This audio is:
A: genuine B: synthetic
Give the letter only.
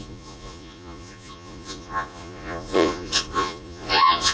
B